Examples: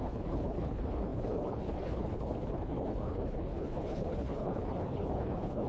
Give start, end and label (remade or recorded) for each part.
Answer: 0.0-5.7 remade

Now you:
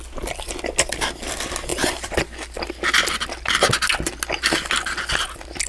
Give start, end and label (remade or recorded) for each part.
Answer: 0.0-5.7 recorded

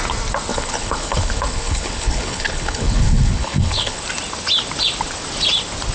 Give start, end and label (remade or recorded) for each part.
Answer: 0.0-0.5 recorded; 0.5-4.0 remade; 4.0-5.9 recorded

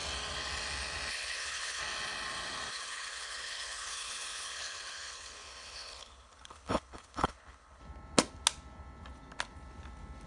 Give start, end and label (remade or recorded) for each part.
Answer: 0.0-1.1 recorded; 1.1-1.8 remade; 1.8-2.7 recorded; 2.7-7.8 remade; 7.8-10.3 recorded